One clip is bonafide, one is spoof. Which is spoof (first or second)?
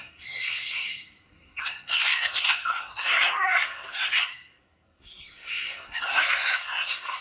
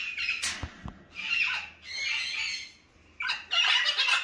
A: first